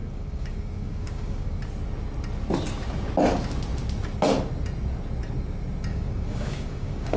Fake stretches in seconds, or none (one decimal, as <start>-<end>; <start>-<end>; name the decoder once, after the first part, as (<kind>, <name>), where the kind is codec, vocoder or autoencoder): 0.0-1.6 (codec, DAC); 5.9-7.2